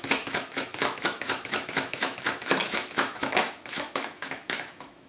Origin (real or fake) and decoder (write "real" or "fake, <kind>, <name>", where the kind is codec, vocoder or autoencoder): fake, autoencoder, DAC-VAE